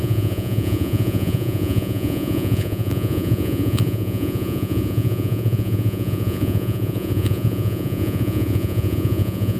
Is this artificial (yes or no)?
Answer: yes